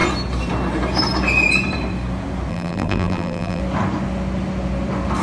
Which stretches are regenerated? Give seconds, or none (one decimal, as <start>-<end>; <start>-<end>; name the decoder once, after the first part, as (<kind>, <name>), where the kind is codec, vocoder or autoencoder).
2.5-3.6 (vocoder, BigVGAN v2)